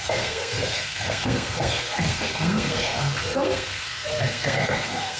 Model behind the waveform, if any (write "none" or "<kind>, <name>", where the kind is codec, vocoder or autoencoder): codec, SNAC